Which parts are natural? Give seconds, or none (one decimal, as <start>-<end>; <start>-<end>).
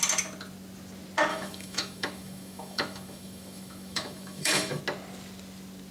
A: 0.0-1.3; 4.8-5.9